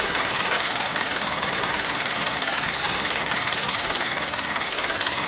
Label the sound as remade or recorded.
remade